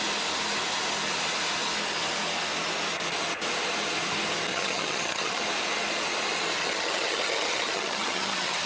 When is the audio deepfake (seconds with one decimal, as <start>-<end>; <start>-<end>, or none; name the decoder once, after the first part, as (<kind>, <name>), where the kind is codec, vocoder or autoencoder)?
4.5-5.4 (vocoder, HiFi-GAN); 6.6-8.7